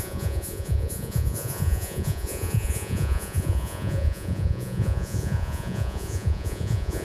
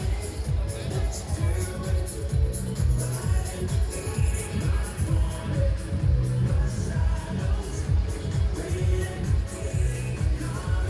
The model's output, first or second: first